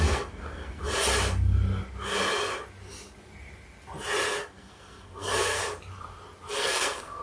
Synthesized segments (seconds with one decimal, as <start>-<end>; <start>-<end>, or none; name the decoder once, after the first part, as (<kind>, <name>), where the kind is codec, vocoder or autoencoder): 0.0-0.8 (codec, SNAC); 4.4-5.6; 6.5-7.2